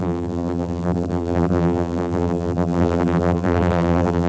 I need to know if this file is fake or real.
fake